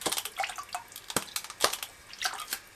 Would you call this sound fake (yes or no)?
no